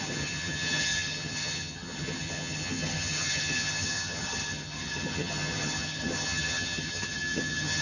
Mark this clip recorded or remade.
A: remade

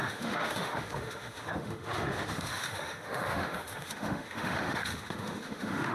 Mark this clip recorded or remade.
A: remade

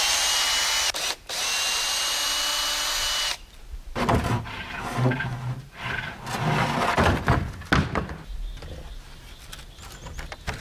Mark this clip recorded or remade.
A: recorded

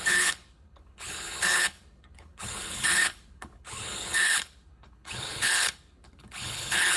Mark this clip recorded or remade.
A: remade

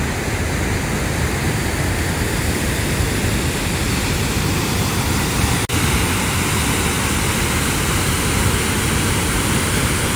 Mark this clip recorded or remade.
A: recorded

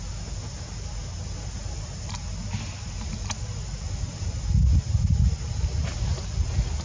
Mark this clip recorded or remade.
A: recorded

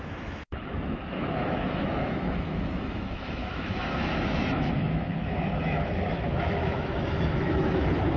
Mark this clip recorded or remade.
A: remade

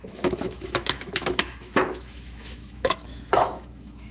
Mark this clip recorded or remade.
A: remade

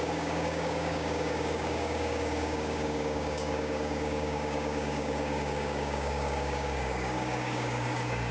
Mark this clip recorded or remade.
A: remade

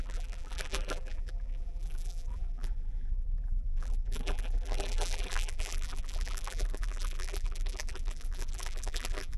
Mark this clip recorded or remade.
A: remade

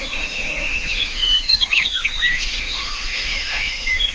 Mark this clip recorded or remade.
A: remade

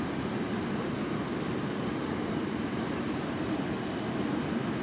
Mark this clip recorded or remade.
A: recorded